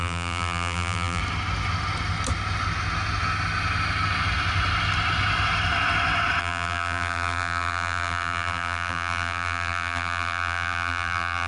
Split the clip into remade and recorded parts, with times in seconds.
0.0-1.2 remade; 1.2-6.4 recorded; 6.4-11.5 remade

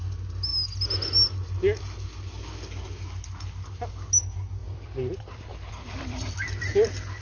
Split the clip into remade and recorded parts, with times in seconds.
0.0-4.6 recorded; 4.6-6.7 remade; 6.7-7.2 recorded

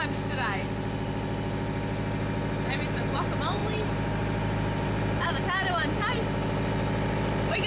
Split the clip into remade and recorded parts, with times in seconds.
0.0-3.6 recorded; 3.6-5.2 remade; 5.2-7.7 recorded

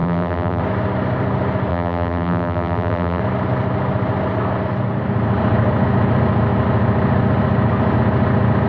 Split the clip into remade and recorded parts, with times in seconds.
0.0-0.6 remade; 0.6-1.7 recorded; 1.7-3.2 remade; 3.2-8.7 recorded

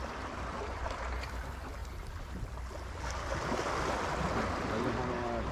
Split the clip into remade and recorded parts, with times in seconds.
0.0-5.5 recorded

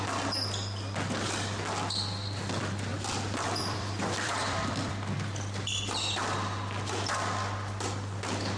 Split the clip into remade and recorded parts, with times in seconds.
0.0-2.9 recorded; 2.9-4.9 remade; 4.9-8.6 recorded

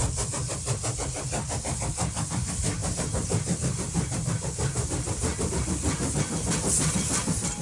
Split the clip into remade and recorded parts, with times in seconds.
0.0-2.8 recorded; 2.8-5.5 remade; 5.5-7.6 recorded

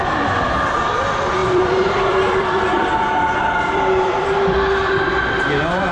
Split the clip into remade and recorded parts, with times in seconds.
0.0-1.4 recorded; 1.4-4.9 remade; 4.9-5.9 recorded